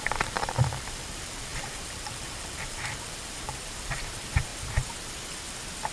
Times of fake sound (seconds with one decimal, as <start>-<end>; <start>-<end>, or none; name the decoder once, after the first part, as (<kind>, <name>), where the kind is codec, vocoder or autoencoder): 0.0-4.5 (vocoder, BigVGAN v2)